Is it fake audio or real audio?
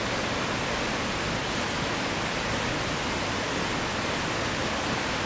real